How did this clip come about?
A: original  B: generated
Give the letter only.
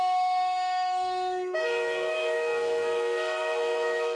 B